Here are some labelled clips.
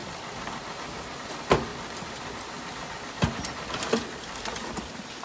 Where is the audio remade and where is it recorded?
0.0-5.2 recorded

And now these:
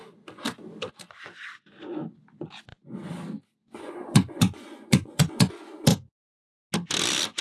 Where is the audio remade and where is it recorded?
0.0-2.7 recorded; 2.7-3.2 remade; 3.2-3.6 recorded; 3.6-5.5 remade; 5.5-5.9 recorded; 5.9-6.4 remade; 6.4-7.4 recorded